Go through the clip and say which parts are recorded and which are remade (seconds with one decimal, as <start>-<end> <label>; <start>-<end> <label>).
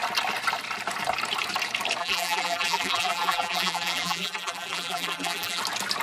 0.0-2.0 recorded; 2.0-5.6 remade; 5.6-6.0 recorded